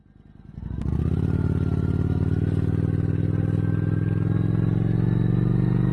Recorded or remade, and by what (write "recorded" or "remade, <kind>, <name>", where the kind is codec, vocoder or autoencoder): recorded